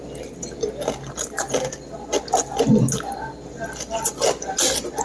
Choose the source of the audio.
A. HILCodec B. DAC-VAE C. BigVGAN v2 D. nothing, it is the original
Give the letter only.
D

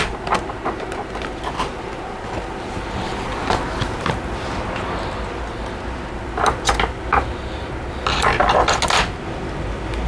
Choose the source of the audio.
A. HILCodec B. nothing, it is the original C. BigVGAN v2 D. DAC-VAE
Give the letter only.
B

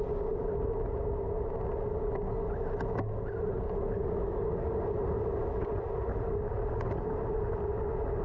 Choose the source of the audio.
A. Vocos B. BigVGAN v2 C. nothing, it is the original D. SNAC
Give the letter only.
C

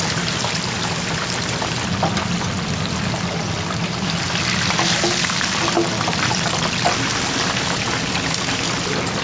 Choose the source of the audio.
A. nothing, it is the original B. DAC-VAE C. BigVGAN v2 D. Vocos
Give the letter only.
A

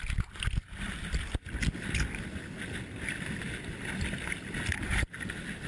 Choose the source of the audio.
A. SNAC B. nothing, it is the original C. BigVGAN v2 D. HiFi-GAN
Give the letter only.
B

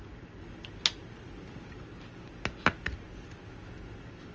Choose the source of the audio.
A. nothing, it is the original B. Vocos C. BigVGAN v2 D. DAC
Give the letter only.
A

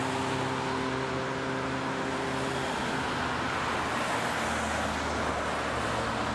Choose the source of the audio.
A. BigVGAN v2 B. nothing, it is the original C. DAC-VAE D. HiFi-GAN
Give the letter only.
B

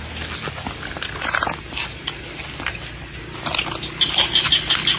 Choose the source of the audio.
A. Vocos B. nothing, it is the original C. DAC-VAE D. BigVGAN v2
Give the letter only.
B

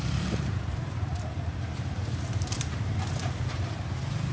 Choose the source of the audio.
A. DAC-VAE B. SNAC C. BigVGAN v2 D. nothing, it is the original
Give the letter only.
C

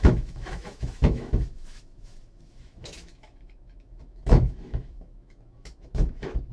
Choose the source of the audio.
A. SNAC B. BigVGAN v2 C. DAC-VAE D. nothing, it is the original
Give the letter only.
C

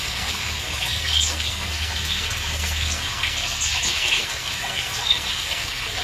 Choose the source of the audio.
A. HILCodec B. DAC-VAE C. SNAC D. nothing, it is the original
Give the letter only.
C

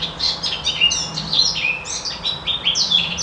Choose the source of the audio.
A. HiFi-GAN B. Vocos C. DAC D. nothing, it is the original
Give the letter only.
D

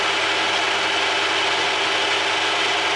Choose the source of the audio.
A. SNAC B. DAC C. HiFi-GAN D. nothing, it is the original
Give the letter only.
D